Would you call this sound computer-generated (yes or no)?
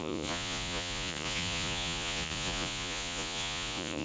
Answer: yes